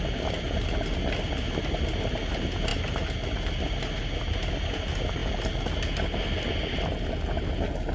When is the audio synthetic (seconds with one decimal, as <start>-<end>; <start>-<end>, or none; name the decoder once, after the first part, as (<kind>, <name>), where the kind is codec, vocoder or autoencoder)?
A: none

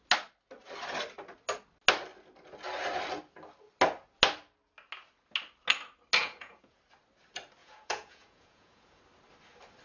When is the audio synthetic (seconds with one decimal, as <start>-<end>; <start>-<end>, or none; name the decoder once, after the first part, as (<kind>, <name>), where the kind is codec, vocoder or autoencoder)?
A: 6.2-6.8 (vocoder, Vocos); 7.6-9.0

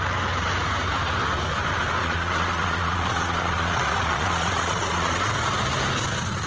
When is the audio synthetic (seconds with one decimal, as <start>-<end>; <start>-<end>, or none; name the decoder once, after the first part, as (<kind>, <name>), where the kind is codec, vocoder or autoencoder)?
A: 2.0-5.3 (vocoder, Vocos)

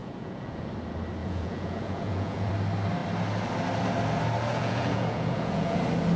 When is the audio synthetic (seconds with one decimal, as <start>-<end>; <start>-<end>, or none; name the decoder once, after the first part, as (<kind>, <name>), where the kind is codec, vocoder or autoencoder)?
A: 0.0-0.7 (vocoder, Vocos); 1.2-2.5; 4.5-5.8

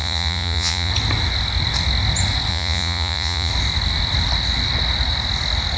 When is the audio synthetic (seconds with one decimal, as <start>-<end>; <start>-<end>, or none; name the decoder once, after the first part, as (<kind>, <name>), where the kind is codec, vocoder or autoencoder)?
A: 0.0-0.9 (vocoder, Vocos); 2.5-3.5

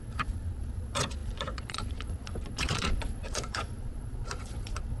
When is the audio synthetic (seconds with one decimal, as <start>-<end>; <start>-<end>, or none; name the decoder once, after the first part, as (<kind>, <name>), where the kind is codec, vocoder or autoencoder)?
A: 0.0-5.0 (vocoder, Vocos)